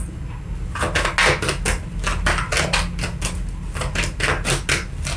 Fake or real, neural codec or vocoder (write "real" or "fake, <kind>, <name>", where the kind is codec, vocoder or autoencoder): real